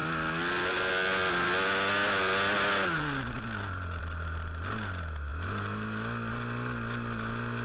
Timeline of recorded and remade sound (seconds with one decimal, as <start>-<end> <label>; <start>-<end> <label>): 0.0-7.6 recorded